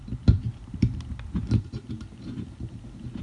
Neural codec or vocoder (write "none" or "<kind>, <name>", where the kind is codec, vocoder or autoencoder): none